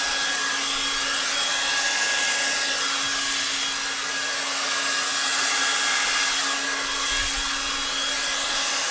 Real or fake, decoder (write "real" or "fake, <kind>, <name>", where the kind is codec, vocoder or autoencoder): real